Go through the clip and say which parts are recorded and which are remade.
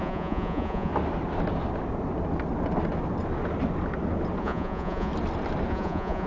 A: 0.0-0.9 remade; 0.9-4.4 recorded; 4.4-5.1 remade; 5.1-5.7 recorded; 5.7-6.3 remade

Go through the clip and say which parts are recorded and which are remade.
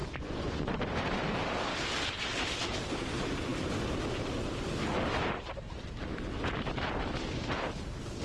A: 0.0-0.7 remade; 0.7-8.2 recorded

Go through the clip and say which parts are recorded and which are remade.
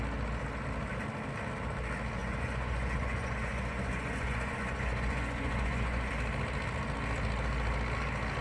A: 0.0-2.2 recorded; 2.2-6.1 remade; 6.1-8.4 recorded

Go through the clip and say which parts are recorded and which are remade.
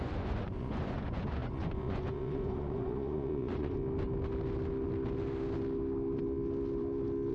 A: 0.0-3.8 remade; 3.8-7.3 recorded